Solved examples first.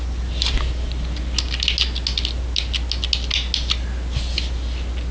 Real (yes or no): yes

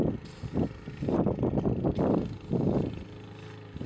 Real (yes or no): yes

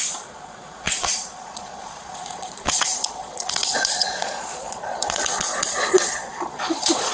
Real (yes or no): no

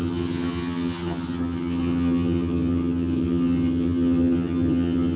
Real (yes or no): no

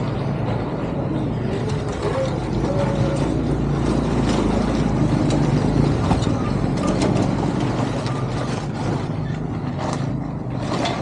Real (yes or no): yes